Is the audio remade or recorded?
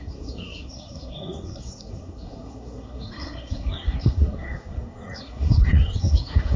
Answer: remade